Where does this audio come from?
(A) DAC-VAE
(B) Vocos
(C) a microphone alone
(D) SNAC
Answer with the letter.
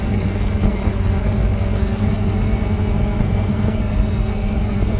D